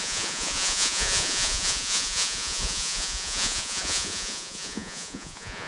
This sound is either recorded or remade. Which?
remade